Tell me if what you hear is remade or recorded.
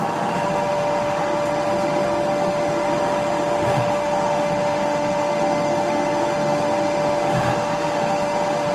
remade